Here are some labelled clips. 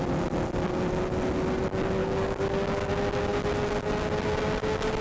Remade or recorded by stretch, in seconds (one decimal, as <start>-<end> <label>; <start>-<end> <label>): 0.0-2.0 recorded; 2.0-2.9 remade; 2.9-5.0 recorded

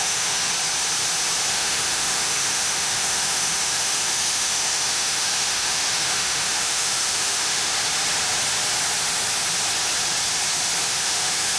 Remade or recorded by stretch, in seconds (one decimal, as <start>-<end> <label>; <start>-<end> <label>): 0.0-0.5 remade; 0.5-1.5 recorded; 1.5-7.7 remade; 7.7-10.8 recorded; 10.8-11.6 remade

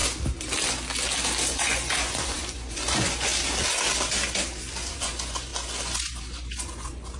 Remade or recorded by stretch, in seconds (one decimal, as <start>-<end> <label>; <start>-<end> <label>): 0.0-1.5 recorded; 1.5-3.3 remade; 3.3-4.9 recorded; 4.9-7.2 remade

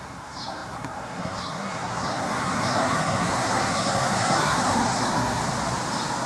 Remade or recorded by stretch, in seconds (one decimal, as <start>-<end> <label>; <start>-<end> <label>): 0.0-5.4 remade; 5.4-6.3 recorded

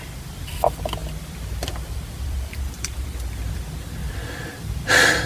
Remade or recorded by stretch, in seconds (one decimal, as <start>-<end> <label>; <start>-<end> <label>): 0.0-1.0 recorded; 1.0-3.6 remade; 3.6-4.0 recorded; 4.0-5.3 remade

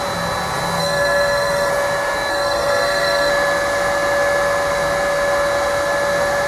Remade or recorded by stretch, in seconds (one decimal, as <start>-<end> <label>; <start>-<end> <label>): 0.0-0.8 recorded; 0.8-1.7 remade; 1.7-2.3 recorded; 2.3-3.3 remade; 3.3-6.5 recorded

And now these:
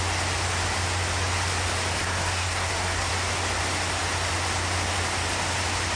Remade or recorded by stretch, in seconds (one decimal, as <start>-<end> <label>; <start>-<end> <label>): 0.0-2.0 recorded; 2.0-3.1 remade; 3.1-6.0 recorded

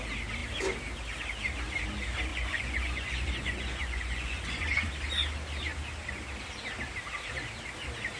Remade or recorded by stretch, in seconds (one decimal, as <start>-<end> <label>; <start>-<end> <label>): 0.0-2.3 recorded; 2.3-4.9 remade; 4.9-8.2 recorded